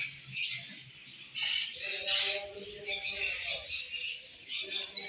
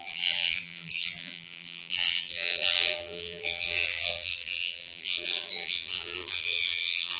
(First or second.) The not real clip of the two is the second